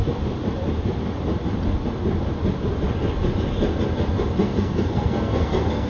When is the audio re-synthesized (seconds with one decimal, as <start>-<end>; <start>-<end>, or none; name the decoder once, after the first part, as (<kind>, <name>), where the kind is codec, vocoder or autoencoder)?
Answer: 4.4-5.9 (codec, SNAC)